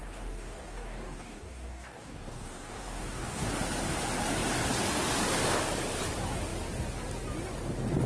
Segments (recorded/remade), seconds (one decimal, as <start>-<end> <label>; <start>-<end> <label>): 0.0-3.5 remade; 3.5-8.1 recorded